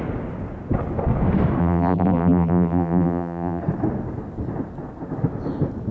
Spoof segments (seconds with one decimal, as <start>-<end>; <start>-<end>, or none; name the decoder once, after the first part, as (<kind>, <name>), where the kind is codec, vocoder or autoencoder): 1.6-3.6 (vocoder, BigVGAN v2)